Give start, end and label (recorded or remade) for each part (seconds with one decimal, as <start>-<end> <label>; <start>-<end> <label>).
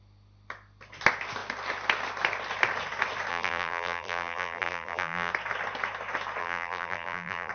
0.0-3.3 recorded; 3.3-5.3 remade; 5.3-6.4 recorded; 6.4-7.5 remade